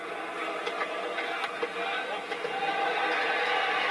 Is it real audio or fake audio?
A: real